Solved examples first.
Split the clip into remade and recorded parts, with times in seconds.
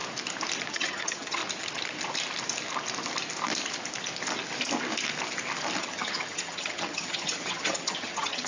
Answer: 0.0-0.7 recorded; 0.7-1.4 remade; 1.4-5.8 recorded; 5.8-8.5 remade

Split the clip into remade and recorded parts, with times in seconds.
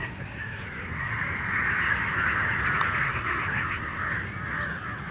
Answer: 0.0-1.1 remade; 1.1-3.0 recorded; 3.0-4.0 remade; 4.0-5.1 recorded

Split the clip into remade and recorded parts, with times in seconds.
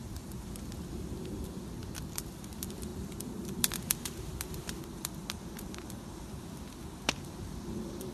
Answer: 0.0-8.1 recorded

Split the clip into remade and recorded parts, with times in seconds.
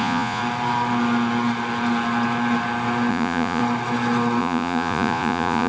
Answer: 0.0-0.4 remade; 0.4-3.1 recorded; 3.1-3.6 remade; 3.6-4.4 recorded; 4.4-5.7 remade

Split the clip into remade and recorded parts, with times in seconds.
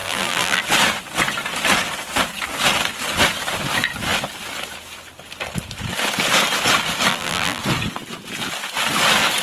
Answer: 0.0-0.6 remade; 0.6-7.1 recorded; 7.1-7.6 remade; 7.6-9.4 recorded